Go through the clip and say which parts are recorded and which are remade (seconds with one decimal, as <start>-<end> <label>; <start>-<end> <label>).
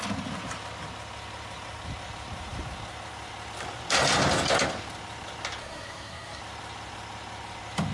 0.0-5.6 recorded; 5.6-6.4 remade; 6.4-7.9 recorded